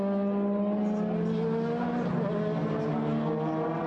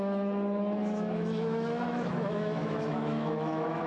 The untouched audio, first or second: first